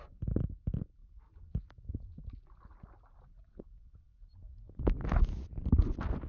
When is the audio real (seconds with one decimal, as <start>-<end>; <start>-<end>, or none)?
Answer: 0.0-6.3